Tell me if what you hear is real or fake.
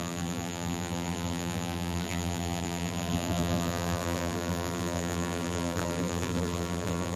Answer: fake